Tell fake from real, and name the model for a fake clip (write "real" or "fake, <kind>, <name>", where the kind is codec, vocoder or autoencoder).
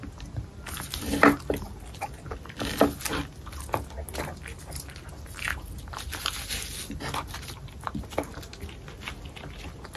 real